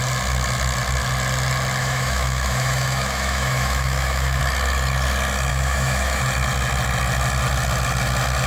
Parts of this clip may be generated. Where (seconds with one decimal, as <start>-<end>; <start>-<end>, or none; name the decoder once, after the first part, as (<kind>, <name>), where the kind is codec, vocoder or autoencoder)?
1.8-4.4 (autoencoder, DAC-VAE); 5.5-6.2